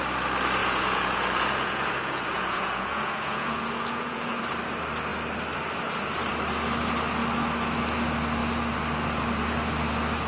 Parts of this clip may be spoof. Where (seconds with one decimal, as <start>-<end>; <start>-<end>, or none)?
0.6-4.4